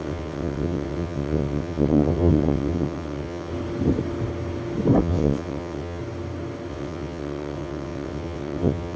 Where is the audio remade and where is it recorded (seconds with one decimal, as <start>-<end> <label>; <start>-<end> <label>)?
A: 0.0-3.5 remade; 3.5-5.0 recorded; 5.0-6.0 remade; 6.0-6.7 recorded; 6.7-9.0 remade